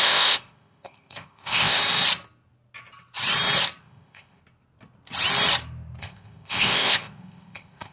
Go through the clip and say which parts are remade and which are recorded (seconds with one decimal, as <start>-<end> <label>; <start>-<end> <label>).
0.0-1.8 remade; 1.8-3.8 recorded; 3.8-4.4 remade; 4.4-6.0 recorded; 6.0-7.9 remade